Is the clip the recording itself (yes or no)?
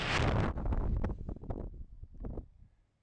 yes